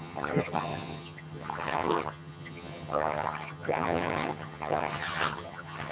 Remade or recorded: remade